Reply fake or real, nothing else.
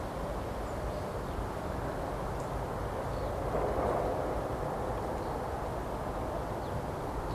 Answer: real